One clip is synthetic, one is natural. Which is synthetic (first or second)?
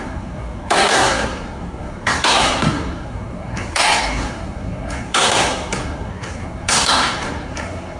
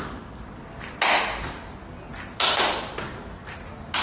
first